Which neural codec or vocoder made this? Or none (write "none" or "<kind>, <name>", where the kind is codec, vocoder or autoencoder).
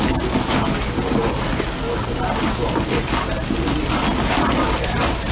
none